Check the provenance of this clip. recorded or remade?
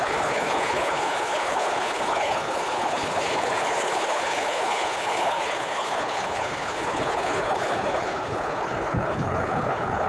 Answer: remade